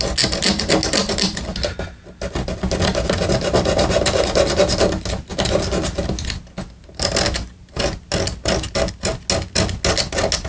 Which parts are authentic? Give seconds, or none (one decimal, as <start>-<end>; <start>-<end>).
0.0-10.5

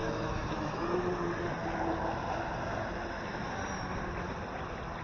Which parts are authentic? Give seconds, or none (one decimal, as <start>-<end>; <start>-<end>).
1.0-5.0

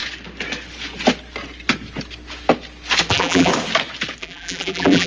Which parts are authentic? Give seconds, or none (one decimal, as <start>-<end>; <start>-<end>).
0.0-3.1; 3.5-4.2

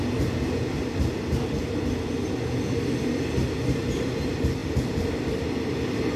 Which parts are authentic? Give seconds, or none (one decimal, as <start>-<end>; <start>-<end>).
0.0-6.2

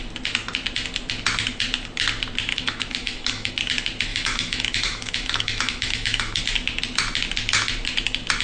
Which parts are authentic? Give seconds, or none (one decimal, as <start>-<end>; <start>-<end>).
0.0-2.5; 3.5-4.1; 6.4-8.4

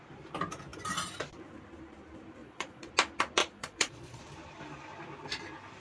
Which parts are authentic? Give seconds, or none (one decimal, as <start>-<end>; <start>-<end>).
0.0-2.4; 2.9-3.4; 4.2-5.8

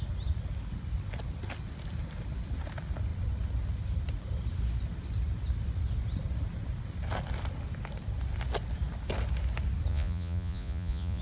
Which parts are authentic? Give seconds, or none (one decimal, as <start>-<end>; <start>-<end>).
0.0-9.9